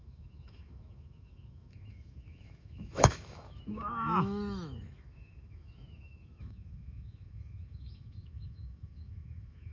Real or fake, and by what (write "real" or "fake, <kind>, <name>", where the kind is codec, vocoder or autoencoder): fake, autoencoder, DAC-VAE